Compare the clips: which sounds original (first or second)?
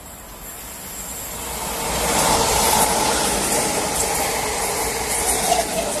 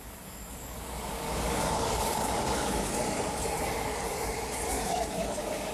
first